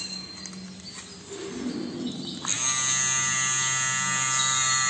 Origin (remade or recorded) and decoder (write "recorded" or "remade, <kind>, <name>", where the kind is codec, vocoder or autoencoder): recorded